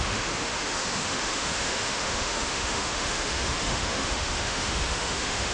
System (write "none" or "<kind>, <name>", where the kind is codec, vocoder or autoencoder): autoencoder, DAC-VAE